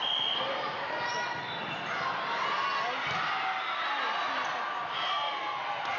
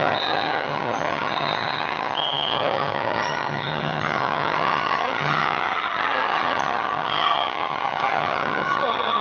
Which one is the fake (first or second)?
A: second